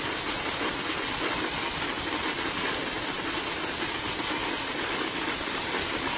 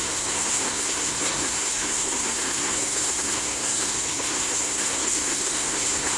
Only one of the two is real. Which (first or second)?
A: first